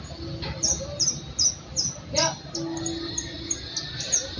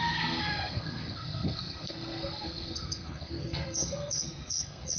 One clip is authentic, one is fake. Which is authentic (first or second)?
first